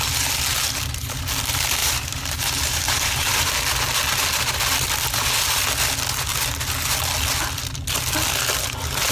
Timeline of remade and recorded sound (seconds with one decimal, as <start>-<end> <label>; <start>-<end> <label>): 0.0-1.8 recorded; 1.8-3.5 remade; 3.5-9.1 recorded